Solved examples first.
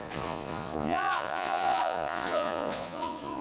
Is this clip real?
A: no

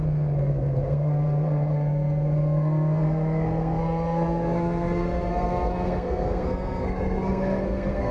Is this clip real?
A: no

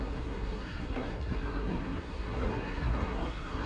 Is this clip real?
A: no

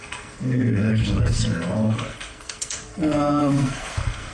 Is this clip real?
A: no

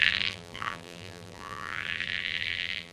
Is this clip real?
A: no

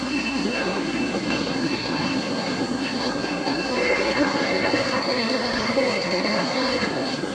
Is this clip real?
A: no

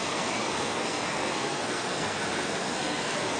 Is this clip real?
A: no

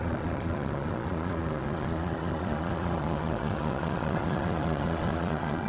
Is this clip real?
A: no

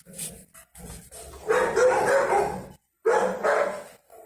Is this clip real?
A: yes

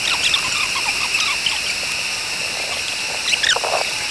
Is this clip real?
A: yes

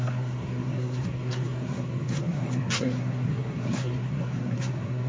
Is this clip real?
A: no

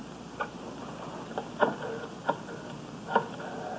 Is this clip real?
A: yes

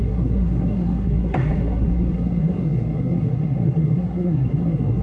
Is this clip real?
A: no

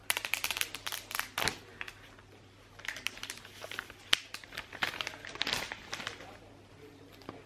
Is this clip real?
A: yes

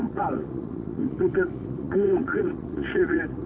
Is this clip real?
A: no